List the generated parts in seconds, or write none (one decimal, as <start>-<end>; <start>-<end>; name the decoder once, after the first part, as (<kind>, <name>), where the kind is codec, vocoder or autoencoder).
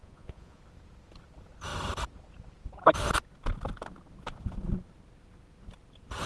0.0-0.6 (vocoder, Vocos)